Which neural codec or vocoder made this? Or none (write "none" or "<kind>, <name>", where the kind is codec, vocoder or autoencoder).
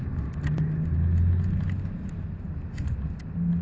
none